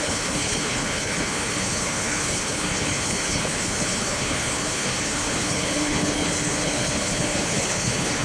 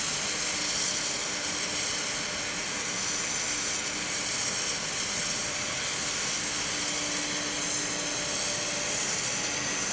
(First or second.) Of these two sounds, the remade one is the first